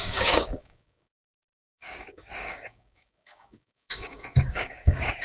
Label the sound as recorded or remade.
remade